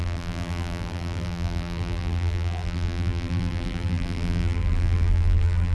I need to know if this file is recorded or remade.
remade